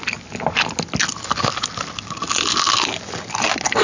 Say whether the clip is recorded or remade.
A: recorded